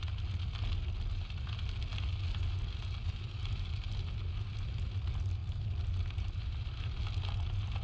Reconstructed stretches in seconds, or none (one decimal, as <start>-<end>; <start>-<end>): none